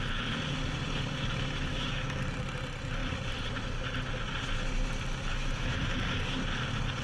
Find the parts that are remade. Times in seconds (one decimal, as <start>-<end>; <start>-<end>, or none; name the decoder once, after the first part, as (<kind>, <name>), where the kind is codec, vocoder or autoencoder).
1.7-2.2 (autoencoder, DAC-VAE); 5.3-5.8